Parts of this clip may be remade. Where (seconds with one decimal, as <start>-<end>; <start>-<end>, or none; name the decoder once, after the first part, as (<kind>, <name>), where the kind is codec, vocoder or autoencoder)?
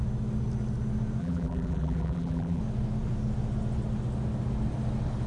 1.2-2.6 (vocoder, BigVGAN v2)